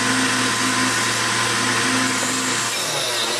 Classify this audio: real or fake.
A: real